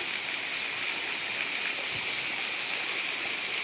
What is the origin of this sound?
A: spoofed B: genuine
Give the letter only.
B